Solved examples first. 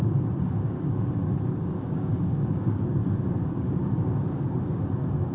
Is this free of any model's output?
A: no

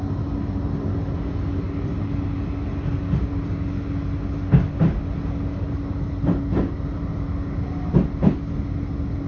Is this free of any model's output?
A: yes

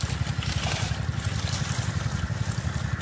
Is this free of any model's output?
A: yes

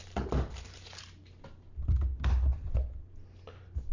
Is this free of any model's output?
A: yes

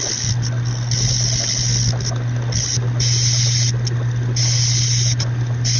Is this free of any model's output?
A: yes